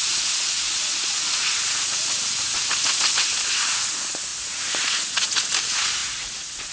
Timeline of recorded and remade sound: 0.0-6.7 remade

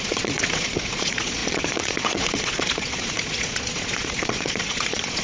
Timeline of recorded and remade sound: 0.0-5.2 remade

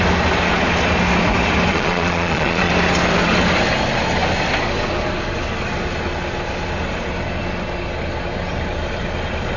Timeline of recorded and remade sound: 0.0-1.7 recorded; 1.7-2.7 remade; 2.7-9.6 recorded